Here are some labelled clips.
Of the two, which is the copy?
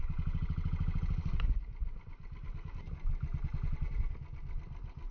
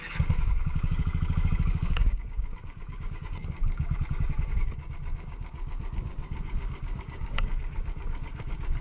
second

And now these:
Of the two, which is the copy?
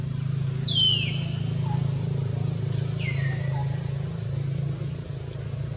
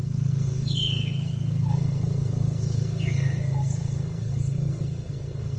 second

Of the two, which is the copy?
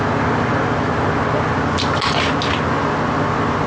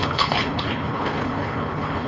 second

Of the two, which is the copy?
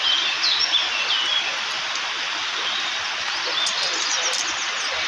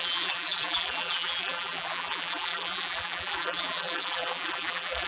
second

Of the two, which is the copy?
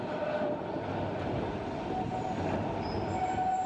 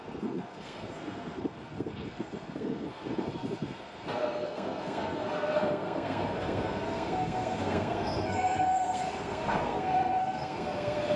second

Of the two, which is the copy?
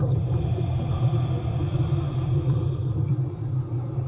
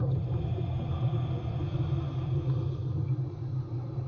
first